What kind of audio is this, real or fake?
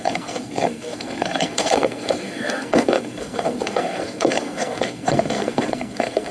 fake